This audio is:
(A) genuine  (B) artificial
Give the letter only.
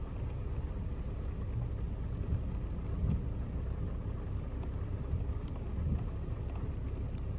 A